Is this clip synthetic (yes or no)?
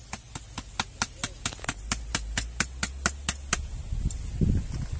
no